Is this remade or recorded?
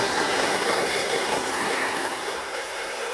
remade